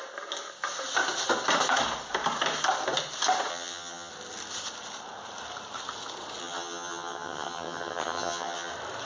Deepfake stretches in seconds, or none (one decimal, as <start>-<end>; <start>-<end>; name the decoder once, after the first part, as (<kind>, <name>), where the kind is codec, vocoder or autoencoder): 3.5-4.1 (vocoder, HiFi-GAN); 6.4-8.7